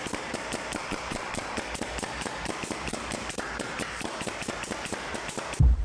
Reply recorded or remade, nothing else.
remade